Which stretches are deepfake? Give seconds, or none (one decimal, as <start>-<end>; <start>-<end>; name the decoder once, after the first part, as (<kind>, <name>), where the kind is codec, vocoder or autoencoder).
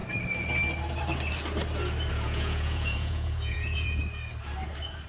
2.1-4.0 (vocoder, Vocos)